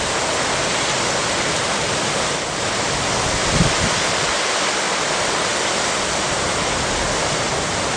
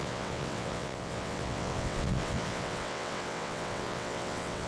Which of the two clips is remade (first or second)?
second